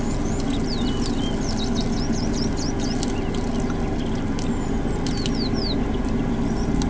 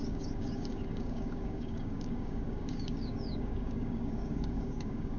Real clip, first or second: first